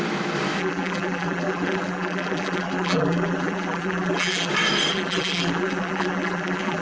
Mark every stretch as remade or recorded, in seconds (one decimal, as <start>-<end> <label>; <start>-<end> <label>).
0.0-0.6 recorded; 0.6-4.5 remade; 4.5-4.9 recorded; 4.9-6.8 remade